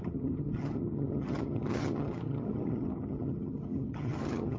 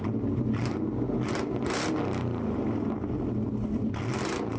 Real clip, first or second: second